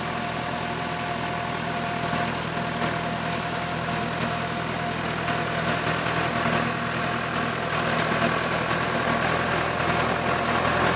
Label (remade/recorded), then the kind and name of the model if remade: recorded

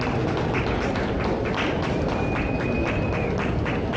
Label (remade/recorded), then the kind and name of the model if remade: recorded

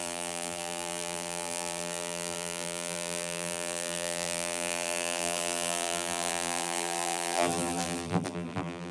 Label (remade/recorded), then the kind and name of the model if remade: remade, vocoder, BigVGAN v2